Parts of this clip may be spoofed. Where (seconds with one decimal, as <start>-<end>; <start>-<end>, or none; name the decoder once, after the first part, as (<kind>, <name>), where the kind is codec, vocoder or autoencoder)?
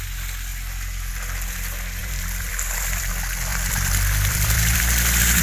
2.0-3.1 (vocoder, BigVGAN v2); 3.5-4.8